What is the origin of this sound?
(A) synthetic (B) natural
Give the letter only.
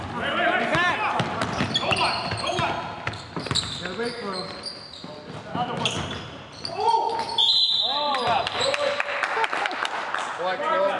B